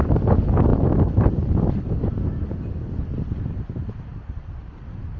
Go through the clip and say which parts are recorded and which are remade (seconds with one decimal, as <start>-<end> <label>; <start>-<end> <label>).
0.0-0.7 recorded; 0.7-2.0 remade; 2.0-4.1 recorded; 4.1-5.2 remade